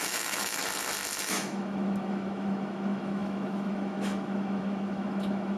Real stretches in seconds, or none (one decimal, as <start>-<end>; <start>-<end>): 0.6-1.2